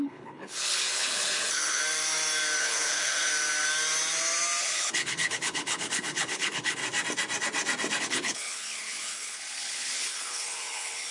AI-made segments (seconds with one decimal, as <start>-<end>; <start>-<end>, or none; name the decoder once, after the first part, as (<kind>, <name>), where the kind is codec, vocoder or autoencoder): 0.0-1.8 (codec, HILCodec); 2.6-3.3; 4.6-6.8; 8.0-11.1